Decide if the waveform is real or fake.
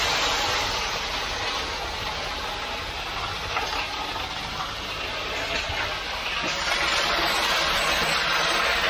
real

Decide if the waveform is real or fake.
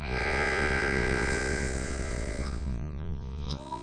fake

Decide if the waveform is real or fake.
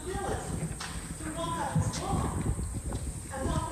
real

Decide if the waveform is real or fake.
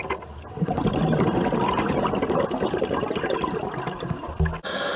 real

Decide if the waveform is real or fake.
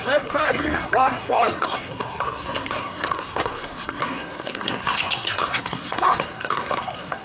fake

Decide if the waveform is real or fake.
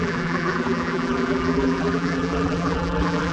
fake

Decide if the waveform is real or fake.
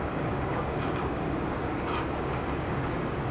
fake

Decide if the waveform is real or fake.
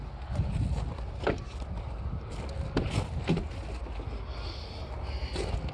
real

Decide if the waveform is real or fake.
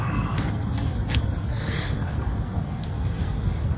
fake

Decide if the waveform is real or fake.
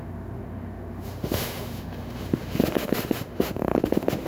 fake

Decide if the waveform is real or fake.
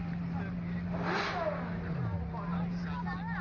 real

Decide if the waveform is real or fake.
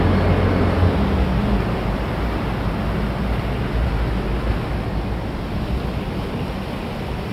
real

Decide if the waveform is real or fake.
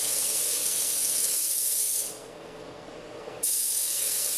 fake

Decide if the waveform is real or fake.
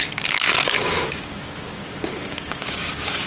fake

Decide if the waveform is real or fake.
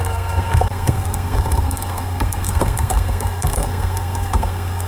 fake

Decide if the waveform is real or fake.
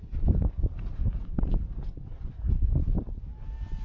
real